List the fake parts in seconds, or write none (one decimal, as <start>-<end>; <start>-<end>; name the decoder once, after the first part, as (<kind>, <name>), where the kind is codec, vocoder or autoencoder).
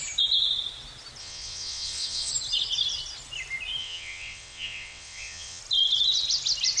1.2-2.3 (vocoder, WaveNeXt); 3.8-5.6